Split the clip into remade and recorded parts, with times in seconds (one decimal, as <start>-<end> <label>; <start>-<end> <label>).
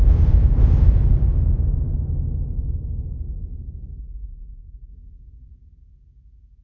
0.0-4.0 recorded; 4.0-4.9 remade; 4.9-6.6 recorded